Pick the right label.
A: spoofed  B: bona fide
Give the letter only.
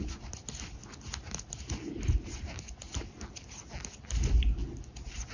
B